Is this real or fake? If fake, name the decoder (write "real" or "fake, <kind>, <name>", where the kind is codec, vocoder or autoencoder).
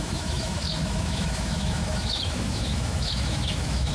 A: fake, autoencoder, DAC-VAE